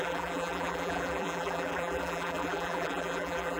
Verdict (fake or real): fake